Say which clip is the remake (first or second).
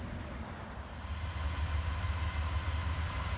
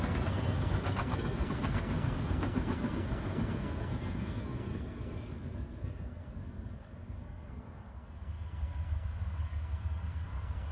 second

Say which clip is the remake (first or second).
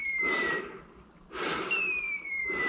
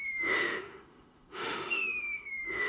second